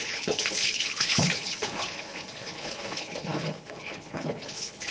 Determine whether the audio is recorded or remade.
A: remade